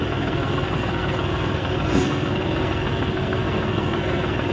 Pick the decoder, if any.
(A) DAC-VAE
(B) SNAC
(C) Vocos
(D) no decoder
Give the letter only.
B